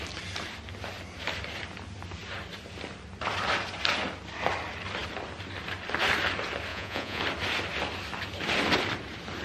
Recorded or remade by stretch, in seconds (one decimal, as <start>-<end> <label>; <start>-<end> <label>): 0.0-6.7 recorded; 6.7-7.2 remade; 7.2-9.4 recorded